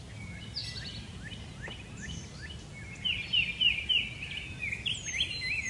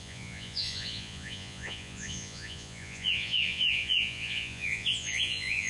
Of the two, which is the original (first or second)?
first